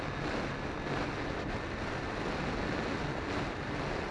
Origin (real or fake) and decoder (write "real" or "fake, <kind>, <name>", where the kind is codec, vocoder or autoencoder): real